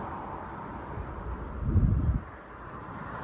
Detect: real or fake real